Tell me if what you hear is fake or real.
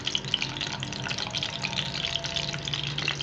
real